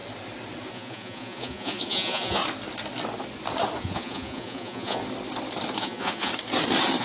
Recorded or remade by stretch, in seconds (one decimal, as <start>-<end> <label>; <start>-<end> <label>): 0.0-0.7 recorded; 0.7-2.4 remade; 2.4-3.8 recorded; 3.8-5.0 remade; 5.0-5.8 recorded; 5.8-6.3 remade; 6.3-7.0 recorded